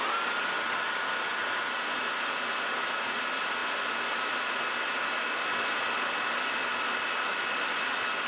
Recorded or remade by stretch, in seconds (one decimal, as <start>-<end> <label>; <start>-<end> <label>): 0.0-8.3 recorded